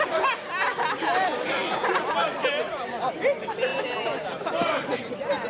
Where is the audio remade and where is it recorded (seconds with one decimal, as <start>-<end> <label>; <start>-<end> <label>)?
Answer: 0.0-5.5 recorded